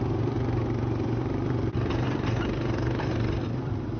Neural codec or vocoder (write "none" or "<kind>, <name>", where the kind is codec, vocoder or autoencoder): vocoder, BigVGAN v2